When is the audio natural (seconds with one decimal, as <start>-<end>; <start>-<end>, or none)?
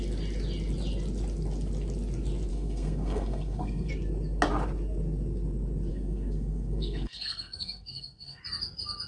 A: 0.0-2.5; 3.9-5.9; 8.4-9.1